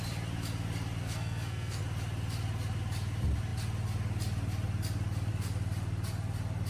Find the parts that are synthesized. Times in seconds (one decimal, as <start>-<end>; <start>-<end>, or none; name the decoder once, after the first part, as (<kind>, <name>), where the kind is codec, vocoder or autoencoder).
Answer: 1.0-1.8 (codec, SNAC)